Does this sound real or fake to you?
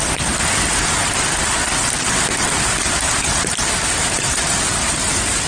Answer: real